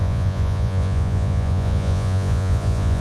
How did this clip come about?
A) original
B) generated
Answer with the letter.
B